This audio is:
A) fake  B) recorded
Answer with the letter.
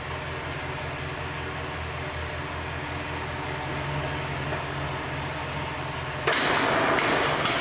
B